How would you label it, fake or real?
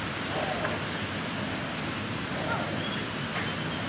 real